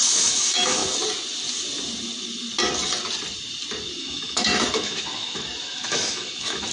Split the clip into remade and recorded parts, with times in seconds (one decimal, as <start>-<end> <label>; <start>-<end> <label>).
0.0-0.8 remade; 0.8-4.0 recorded; 4.0-6.7 remade